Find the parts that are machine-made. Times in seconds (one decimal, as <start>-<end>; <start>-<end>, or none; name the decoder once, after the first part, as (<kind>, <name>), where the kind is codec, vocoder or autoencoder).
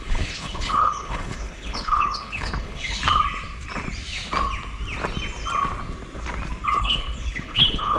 0.0-3.0 (codec, HILCodec); 6.8-8.0